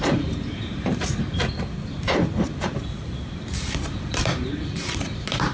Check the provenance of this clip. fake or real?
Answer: fake